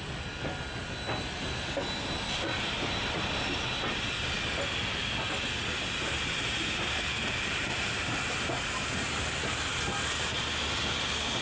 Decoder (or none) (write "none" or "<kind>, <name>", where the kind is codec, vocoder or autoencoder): none